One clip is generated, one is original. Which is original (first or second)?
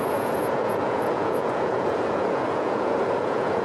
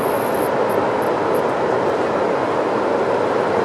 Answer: second